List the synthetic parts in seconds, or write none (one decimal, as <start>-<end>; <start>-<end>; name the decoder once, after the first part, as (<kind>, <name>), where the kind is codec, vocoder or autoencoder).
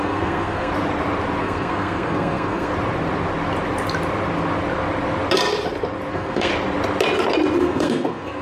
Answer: 0.0-0.7 (codec, SNAC); 1.4-2.7; 6.1-6.5; 7.6-8.4